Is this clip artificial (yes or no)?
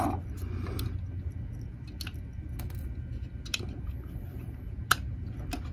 no